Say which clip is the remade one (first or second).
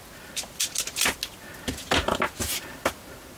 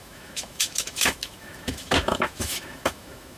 second